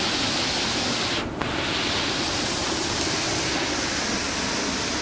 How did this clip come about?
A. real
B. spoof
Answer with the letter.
A